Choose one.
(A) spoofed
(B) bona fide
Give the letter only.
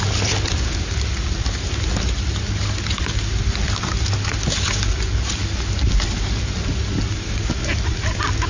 B